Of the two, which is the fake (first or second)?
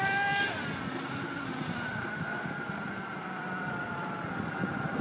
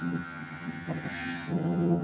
second